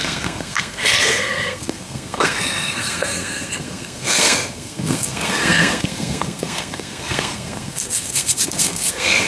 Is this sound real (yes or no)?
no